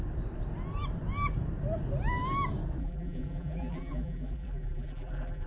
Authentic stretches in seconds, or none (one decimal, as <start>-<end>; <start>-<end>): 0.0-2.8